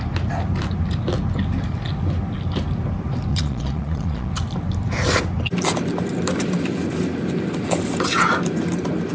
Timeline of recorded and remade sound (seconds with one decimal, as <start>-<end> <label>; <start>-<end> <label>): 0.0-3.3 recorded; 3.3-4.3 remade; 4.3-9.1 recorded